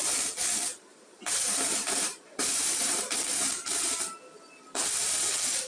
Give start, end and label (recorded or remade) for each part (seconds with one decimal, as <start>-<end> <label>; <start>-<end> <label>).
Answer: 0.0-0.9 recorded; 0.9-3.2 remade; 3.2-5.7 recorded

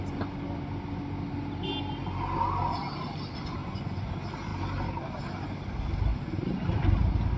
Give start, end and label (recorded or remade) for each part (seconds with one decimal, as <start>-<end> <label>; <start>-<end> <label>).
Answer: 0.0-3.6 recorded; 3.6-4.1 remade; 4.1-7.4 recorded

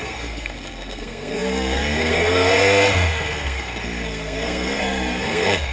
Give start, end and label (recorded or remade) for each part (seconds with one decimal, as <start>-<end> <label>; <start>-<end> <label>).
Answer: 0.0-5.7 remade

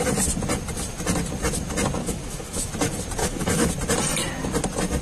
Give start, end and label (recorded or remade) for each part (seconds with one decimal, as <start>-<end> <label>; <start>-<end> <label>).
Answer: 0.0-2.0 recorded; 2.0-2.7 remade; 2.7-3.2 recorded; 3.2-3.7 remade; 3.7-5.0 recorded

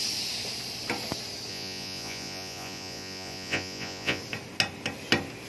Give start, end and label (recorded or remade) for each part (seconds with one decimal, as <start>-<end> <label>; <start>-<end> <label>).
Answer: 0.0-1.5 recorded; 1.5-4.2 remade; 4.2-5.5 recorded

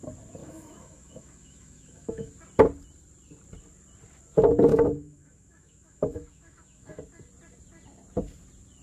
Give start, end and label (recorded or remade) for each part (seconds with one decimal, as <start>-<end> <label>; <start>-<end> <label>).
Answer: 0.0-0.4 recorded; 0.4-2.3 remade; 2.3-4.7 recorded; 4.7-7.0 remade; 7.0-8.8 recorded

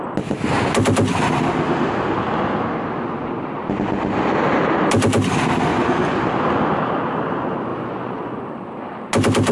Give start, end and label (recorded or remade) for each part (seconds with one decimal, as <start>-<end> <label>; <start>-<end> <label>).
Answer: 0.0-5.7 recorded; 5.7-6.2 remade; 6.2-7.7 recorded; 7.7-8.8 remade; 8.8-9.5 recorded

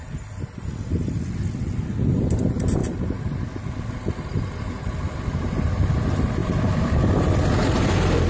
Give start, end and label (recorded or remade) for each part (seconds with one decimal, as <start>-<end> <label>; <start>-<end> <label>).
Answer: 0.0-6.4 recorded; 6.4-8.3 remade